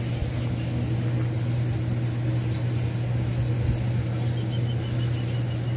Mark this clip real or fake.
real